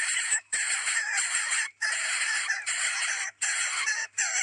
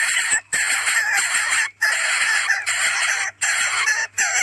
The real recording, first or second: second